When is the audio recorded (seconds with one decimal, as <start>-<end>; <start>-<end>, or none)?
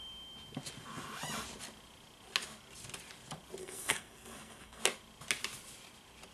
0.0-3.6; 4.8-6.3